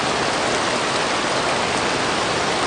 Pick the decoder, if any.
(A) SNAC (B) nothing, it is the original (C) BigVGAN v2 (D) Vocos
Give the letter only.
B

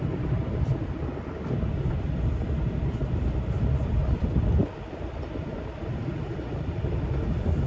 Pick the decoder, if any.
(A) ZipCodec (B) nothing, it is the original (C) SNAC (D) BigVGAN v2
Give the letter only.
D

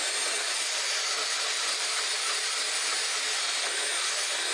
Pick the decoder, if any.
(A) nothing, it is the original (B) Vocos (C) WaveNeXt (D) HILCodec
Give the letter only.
A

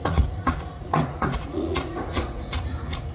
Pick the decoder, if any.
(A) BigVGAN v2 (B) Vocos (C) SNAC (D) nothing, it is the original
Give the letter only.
B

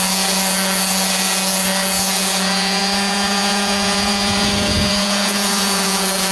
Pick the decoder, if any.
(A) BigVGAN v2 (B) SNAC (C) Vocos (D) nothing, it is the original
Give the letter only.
C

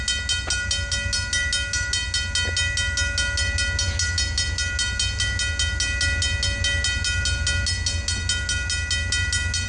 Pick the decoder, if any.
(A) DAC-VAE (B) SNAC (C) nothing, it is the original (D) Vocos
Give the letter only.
C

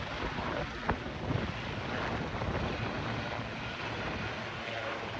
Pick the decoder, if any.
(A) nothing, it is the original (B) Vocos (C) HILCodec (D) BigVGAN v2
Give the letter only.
A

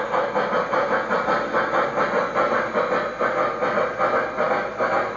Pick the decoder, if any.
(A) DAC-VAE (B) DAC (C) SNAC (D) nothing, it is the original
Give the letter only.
D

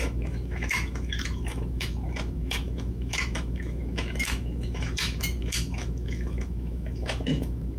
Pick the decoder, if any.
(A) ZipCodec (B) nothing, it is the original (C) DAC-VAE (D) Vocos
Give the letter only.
C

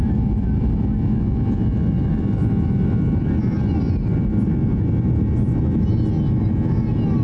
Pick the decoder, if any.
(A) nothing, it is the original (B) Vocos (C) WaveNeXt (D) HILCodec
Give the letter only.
A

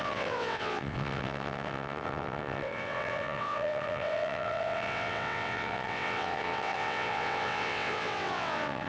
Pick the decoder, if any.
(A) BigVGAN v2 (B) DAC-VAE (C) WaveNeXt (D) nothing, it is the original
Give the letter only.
C